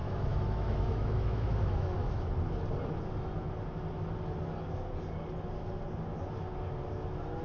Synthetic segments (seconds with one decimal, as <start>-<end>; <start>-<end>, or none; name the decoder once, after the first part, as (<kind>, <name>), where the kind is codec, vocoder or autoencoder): 0.0-2.3 (autoencoder, DAC-VAE)